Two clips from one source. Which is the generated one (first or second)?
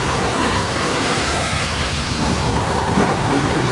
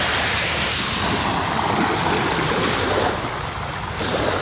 first